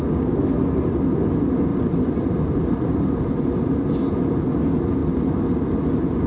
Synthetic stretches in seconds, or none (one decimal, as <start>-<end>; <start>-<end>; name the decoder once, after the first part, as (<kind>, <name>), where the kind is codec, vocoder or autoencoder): 1.7-3.1 (vocoder, BigVGAN v2); 5.0-5.8